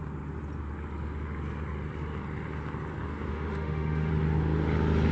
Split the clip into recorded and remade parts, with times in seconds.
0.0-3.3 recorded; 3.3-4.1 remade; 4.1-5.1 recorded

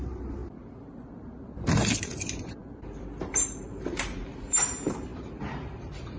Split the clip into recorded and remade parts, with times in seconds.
0.0-0.4 remade; 0.4-2.0 recorded; 2.0-2.6 remade; 2.6-3.2 recorded; 3.2-6.2 remade

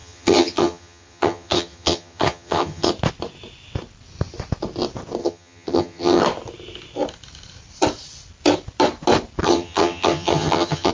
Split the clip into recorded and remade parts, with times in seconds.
0.0-2.9 remade; 2.9-5.2 recorded; 5.2-6.2 remade; 6.2-9.4 recorded; 9.4-10.9 remade